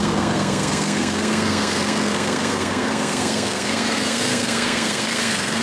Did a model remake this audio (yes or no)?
yes